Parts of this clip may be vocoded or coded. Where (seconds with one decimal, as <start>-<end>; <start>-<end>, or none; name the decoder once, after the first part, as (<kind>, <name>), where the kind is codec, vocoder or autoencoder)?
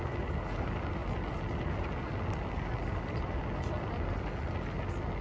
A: none